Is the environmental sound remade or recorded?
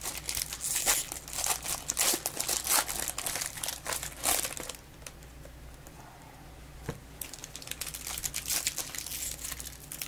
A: recorded